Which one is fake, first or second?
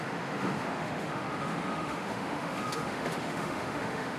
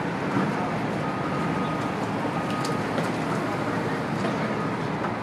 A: first